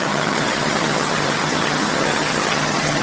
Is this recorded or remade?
remade